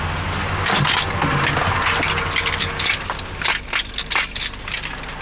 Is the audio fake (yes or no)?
no